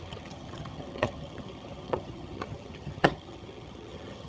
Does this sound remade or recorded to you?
remade